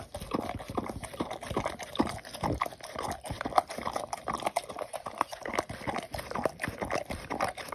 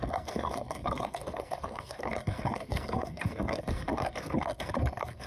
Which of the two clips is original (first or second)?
first